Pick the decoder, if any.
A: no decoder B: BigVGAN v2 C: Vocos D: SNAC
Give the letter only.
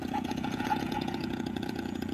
C